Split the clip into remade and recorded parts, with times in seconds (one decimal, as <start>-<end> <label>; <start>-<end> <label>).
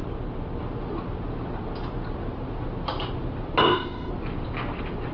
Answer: 0.0-3.6 recorded; 3.6-4.1 remade; 4.1-5.1 recorded